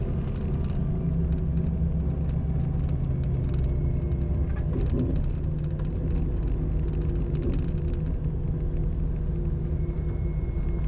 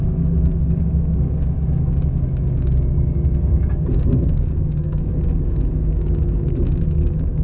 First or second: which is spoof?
second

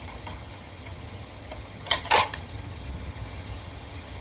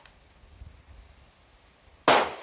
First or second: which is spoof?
first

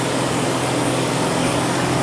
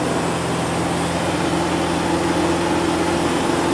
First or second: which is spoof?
first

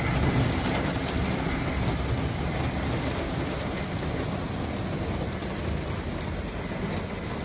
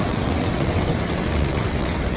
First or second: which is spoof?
second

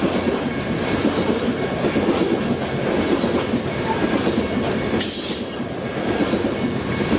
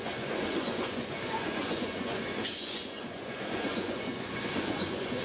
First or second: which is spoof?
second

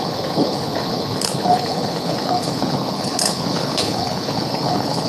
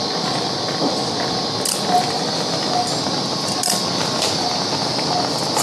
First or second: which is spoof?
first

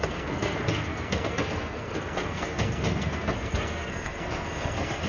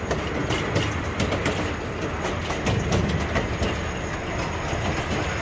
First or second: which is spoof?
first